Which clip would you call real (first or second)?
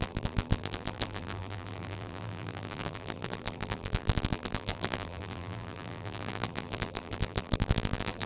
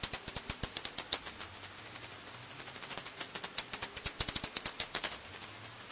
second